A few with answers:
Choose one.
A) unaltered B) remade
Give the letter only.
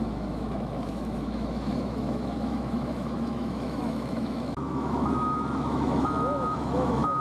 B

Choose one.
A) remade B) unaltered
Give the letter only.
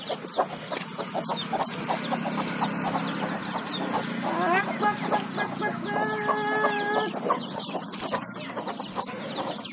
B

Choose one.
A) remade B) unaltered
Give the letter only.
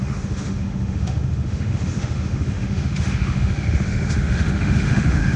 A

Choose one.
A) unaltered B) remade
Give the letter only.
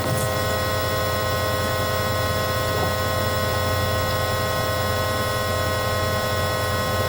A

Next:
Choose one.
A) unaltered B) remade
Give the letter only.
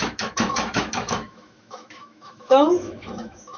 B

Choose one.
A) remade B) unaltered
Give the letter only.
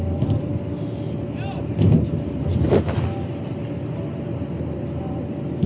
B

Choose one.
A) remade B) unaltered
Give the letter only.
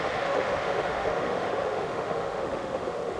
A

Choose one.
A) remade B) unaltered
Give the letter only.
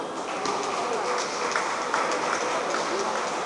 B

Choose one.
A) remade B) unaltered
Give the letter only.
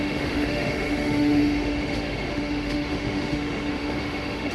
A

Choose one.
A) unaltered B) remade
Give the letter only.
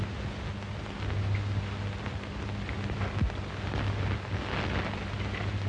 A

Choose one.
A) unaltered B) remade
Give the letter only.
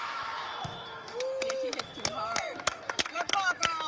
B